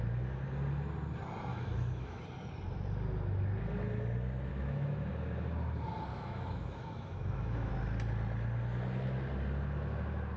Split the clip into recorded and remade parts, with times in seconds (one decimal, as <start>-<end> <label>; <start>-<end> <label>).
0.0-1.5 recorded; 1.5-2.2 remade; 2.2-4.5 recorded; 4.5-5.1 remade; 5.1-6.1 recorded; 6.1-7.7 remade; 7.7-10.4 recorded